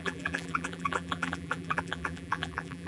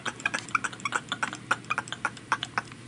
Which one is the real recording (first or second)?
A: second